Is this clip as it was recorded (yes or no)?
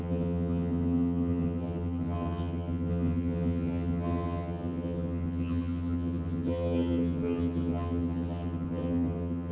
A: no